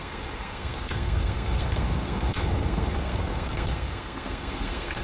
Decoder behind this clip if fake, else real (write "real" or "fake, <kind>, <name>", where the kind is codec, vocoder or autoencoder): fake, codec, SNAC